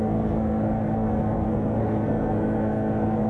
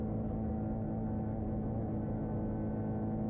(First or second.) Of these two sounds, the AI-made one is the first